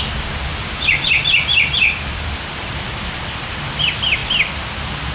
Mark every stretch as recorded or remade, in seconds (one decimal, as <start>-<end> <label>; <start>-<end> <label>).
0.0-0.5 recorded; 0.5-3.6 remade; 3.6-5.1 recorded